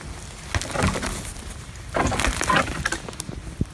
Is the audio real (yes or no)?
yes